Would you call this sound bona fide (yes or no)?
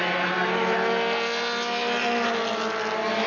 yes